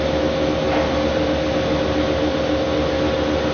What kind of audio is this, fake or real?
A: real